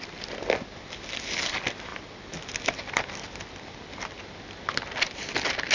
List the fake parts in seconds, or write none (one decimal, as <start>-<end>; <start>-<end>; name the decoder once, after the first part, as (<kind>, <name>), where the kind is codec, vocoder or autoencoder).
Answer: none

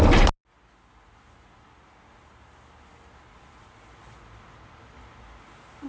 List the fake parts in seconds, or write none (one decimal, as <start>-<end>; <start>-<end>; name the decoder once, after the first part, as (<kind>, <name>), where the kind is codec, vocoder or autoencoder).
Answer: none

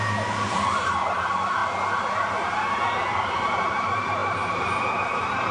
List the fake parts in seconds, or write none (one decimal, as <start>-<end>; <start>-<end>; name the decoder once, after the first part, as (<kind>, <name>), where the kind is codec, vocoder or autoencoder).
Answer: 0.0-1.6 (vocoder, BigVGAN v2); 2.3-5.5